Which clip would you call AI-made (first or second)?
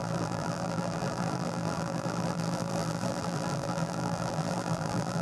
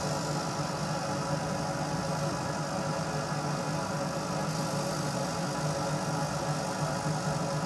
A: first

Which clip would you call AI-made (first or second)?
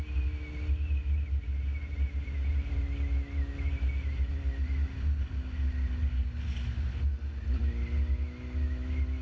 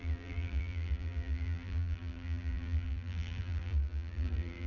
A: second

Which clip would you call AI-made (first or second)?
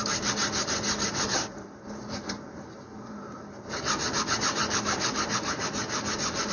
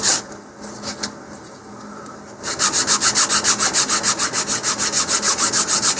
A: first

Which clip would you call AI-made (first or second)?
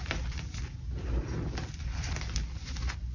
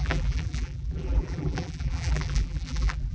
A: second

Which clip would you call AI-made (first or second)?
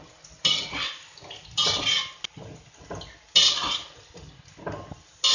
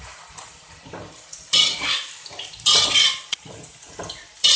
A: second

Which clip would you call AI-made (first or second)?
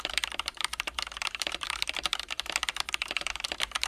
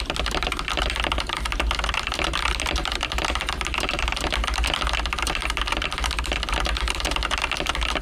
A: first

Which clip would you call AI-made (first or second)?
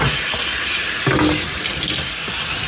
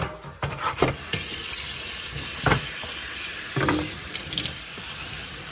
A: second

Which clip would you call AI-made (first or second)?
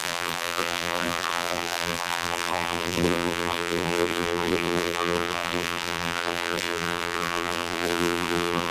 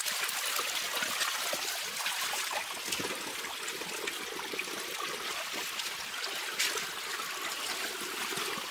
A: first